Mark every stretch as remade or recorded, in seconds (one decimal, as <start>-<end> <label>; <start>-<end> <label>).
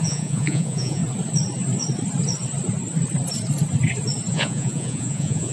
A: 0.0-1.0 remade; 1.0-4.3 recorded; 4.3-5.5 remade